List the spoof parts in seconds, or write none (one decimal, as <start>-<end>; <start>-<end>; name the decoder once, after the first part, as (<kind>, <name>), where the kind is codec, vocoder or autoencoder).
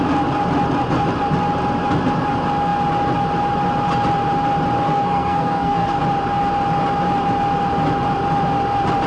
4.9-6.0 (codec, SNAC)